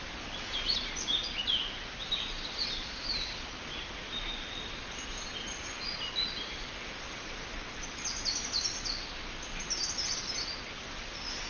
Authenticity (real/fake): real